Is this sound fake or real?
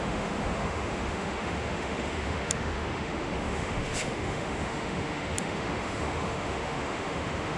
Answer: fake